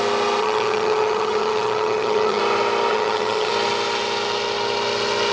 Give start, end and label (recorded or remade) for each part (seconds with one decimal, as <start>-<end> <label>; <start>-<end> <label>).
0.0-0.4 recorded; 0.4-2.4 remade; 2.4-2.9 recorded; 2.9-3.5 remade; 3.5-5.3 recorded

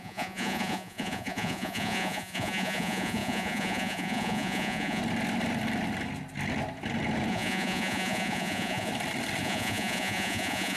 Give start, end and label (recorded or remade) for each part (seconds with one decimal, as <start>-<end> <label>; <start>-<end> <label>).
0.0-5.0 remade; 5.0-7.3 recorded; 7.3-8.9 remade; 8.9-9.4 recorded; 9.4-10.8 remade

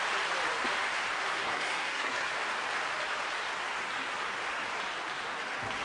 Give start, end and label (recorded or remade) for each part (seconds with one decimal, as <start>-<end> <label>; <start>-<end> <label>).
0.0-1.3 recorded; 1.3-2.3 remade; 2.3-5.8 recorded

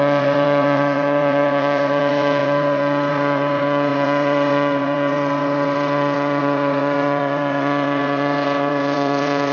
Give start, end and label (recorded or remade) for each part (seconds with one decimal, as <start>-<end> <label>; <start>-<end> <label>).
0.0-9.5 remade

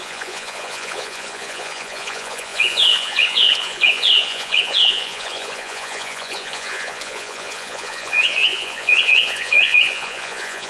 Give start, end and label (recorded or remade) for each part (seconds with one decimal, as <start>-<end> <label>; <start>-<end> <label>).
0.0-10.7 remade